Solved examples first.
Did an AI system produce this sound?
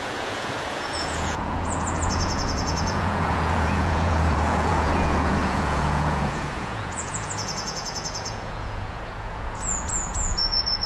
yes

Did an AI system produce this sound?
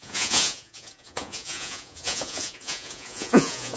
yes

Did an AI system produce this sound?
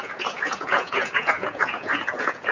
yes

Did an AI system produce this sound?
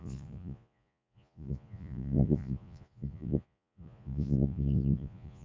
yes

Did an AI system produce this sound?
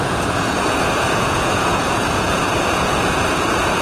yes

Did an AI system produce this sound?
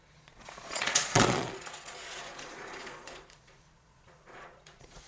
yes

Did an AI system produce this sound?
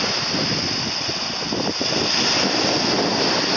no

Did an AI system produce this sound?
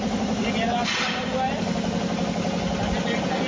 no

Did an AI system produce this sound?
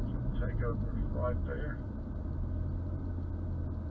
no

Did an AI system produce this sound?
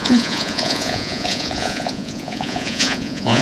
yes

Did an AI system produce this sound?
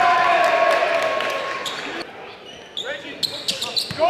no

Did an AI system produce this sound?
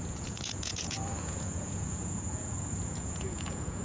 yes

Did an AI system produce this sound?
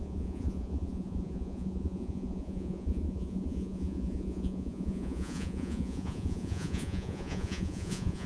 yes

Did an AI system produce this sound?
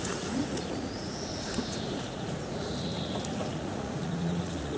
yes